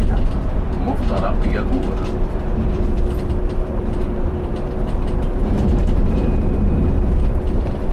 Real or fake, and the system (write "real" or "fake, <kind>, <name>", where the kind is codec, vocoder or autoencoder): fake, vocoder, BigVGAN v2